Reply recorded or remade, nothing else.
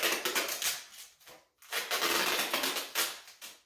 recorded